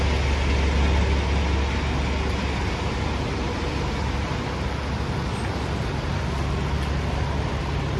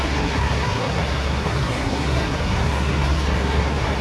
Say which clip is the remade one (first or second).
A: second